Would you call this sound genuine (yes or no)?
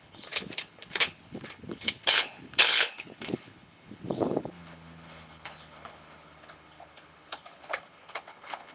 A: no